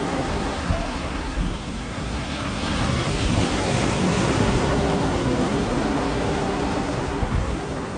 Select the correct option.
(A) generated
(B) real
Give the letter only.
A